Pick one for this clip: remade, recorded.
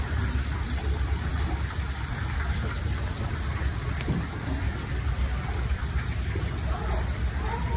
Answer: remade